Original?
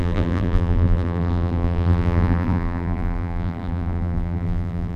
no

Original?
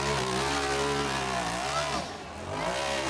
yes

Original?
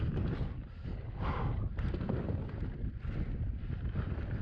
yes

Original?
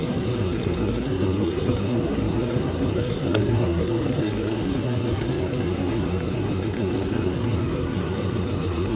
no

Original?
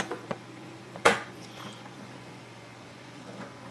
no